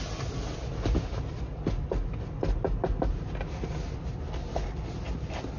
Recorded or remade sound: recorded